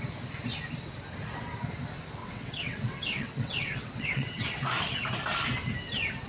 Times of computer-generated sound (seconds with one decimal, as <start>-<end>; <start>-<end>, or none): 2.2-4.4